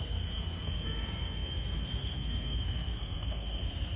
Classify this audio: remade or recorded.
remade